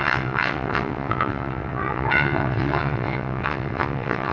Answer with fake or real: fake